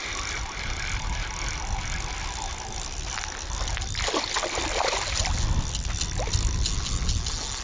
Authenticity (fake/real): real